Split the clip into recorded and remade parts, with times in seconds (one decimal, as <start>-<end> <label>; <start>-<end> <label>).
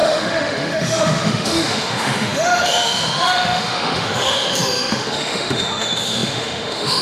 0.0-7.0 remade